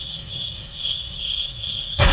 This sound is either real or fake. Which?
fake